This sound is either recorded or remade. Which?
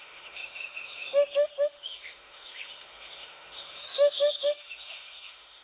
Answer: remade